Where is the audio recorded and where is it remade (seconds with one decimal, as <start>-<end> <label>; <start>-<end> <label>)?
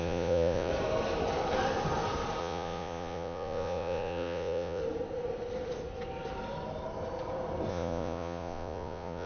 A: 0.0-0.7 remade; 0.7-2.4 recorded; 2.4-4.8 remade; 4.8-7.7 recorded; 7.7-9.3 remade